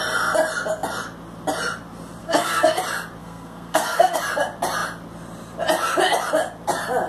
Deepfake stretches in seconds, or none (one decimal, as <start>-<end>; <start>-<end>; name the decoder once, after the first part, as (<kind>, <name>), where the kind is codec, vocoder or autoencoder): 2.2-2.8 (codec, SNAC); 3.2-4.2